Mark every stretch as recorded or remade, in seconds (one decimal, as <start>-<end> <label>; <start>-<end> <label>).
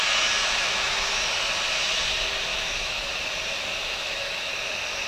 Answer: 0.0-0.4 recorded; 0.4-1.2 remade; 1.2-2.5 recorded; 2.5-3.0 remade; 3.0-3.8 recorded; 3.8-4.5 remade; 4.5-5.1 recorded